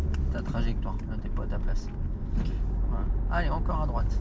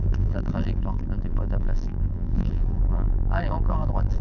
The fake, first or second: second